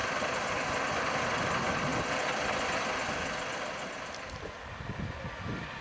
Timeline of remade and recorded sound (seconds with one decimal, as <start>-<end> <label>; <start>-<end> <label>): 0.0-5.8 recorded